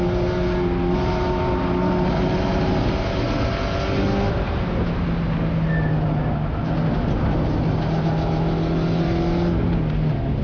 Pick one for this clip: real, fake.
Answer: real